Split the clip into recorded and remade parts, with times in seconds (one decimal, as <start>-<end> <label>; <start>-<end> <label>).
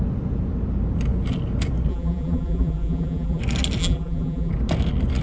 0.0-1.9 recorded; 1.9-3.4 remade; 3.4-3.8 recorded; 3.8-4.5 remade; 4.5-5.2 recorded